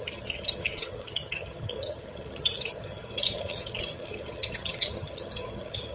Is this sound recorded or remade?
remade